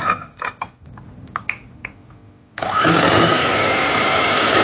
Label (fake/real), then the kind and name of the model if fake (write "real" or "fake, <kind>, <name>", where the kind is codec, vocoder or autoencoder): real